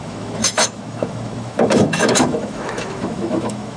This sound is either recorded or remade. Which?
remade